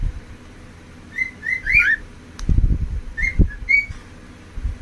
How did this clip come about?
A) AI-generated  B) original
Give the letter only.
B